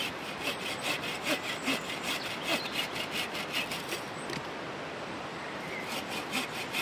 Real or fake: fake